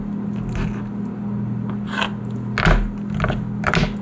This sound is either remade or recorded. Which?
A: recorded